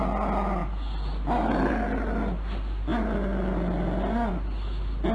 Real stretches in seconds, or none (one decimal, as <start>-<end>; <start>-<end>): 0.0-5.1